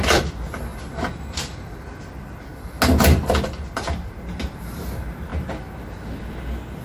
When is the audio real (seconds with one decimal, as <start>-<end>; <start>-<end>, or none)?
0.0-6.8